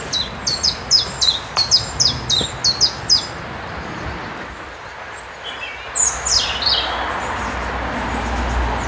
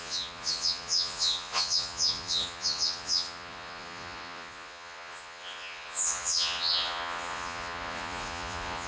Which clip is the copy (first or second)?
second